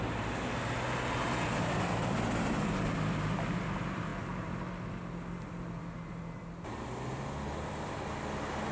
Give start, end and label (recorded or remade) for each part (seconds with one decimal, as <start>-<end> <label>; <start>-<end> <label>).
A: 0.0-8.7 recorded